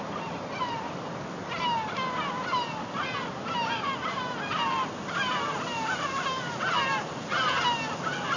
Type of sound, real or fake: real